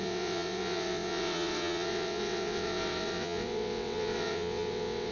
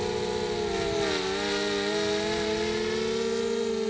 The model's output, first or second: first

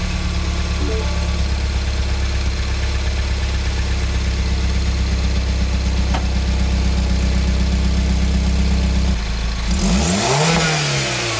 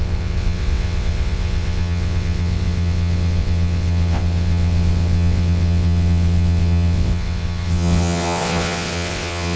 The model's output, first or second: second